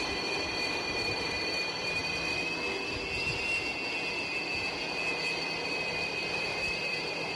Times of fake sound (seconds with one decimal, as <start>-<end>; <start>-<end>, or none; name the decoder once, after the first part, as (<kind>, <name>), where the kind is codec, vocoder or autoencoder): 0.0-2.0 (vocoder, BigVGAN v2); 6.4-7.4